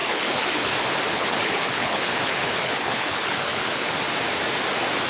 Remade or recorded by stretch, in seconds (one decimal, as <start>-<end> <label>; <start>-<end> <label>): 0.0-0.7 remade; 0.7-1.1 recorded; 1.1-3.9 remade; 3.9-5.1 recorded

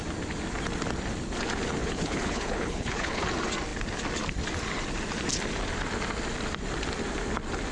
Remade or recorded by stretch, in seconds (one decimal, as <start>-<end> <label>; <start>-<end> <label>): 0.0-1.8 recorded; 1.8-3.2 remade; 3.2-7.7 recorded

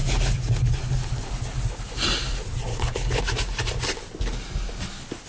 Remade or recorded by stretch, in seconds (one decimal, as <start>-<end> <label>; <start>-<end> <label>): 0.0-2.7 recorded; 2.7-3.2 remade; 3.2-5.3 recorded

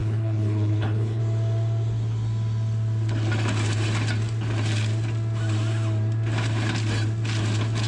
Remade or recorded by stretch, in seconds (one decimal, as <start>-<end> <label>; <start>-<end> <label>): 0.0-1.2 remade; 1.2-7.9 recorded